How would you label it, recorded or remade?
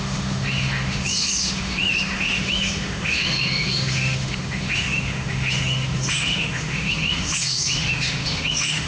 remade